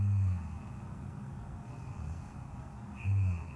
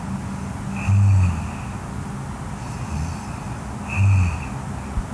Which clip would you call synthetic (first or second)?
first